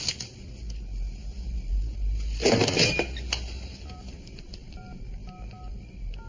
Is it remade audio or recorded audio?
recorded